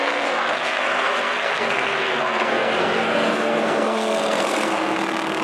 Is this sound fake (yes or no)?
yes